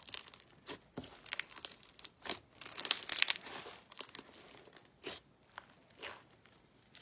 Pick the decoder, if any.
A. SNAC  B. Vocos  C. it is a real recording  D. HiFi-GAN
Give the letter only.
C